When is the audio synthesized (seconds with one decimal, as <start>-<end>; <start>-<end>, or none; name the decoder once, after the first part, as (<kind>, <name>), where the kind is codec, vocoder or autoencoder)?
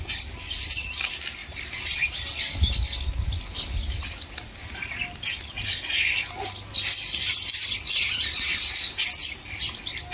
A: none